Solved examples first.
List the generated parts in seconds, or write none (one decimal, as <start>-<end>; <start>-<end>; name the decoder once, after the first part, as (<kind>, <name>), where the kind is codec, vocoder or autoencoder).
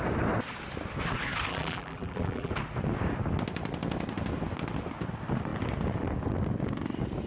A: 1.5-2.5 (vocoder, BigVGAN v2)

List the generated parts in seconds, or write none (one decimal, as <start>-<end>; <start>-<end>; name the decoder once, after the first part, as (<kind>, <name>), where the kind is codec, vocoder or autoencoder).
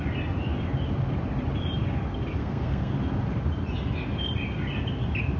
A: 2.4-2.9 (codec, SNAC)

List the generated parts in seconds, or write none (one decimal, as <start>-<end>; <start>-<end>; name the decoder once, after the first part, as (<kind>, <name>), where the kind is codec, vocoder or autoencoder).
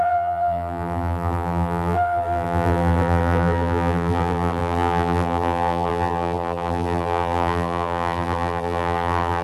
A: 0.0-9.4 (vocoder, BigVGAN v2)